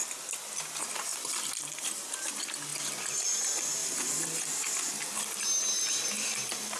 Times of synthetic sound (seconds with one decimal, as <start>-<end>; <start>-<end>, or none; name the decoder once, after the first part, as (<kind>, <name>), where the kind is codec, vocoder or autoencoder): 1.1-2.3 (vocoder, BigVGAN v2); 3.8-5.3